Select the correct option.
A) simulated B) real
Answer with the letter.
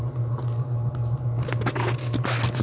B